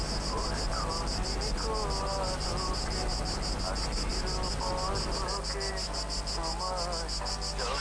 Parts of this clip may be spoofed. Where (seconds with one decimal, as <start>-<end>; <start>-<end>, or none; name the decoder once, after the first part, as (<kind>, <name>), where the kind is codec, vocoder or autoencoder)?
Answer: none